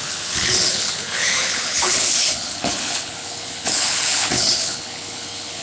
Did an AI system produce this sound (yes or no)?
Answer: yes